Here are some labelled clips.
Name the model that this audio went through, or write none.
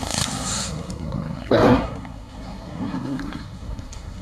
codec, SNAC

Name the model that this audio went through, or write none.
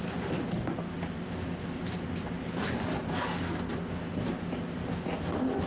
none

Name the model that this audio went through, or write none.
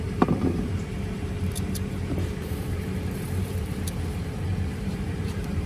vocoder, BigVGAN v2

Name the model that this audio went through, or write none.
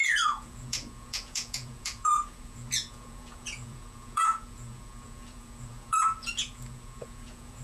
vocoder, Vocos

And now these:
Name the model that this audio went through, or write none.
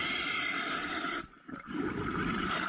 none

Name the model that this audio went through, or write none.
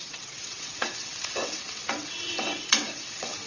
vocoder, WaveNeXt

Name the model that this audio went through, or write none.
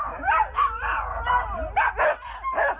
vocoder, BigVGAN v2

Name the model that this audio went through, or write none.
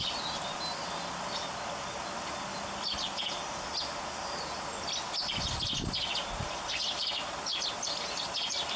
none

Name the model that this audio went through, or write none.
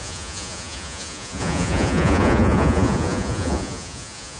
vocoder, Vocos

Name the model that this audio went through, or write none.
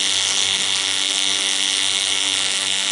codec, SNAC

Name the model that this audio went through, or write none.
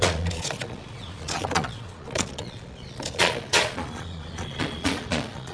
vocoder, Vocos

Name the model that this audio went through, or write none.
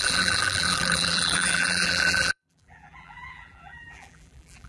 vocoder, BigVGAN v2